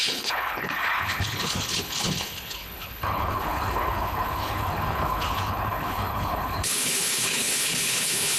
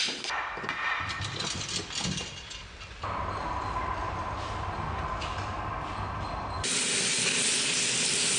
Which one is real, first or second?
second